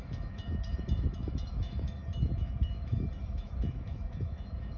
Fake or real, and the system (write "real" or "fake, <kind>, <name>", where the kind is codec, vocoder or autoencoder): fake, autoencoder, DAC-VAE